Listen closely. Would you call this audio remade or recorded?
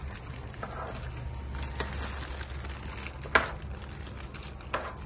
recorded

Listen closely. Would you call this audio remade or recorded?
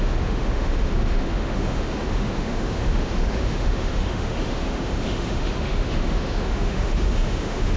remade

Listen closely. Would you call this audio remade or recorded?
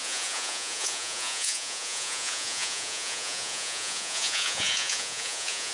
remade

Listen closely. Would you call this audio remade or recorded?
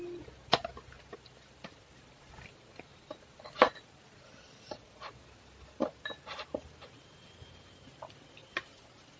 recorded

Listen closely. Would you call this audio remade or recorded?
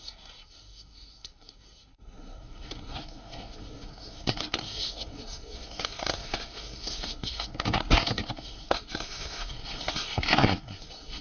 remade